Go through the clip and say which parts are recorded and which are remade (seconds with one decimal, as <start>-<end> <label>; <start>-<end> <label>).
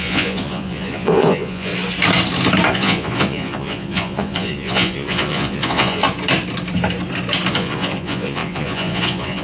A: 0.0-1.7 remade; 1.7-2.7 recorded; 2.7-6.0 remade; 6.0-7.5 recorded; 7.5-9.4 remade